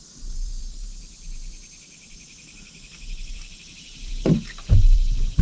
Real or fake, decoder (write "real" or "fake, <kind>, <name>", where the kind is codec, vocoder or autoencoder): fake, vocoder, BigVGAN v2